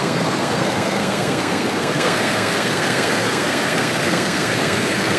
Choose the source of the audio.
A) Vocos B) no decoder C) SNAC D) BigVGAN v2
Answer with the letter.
C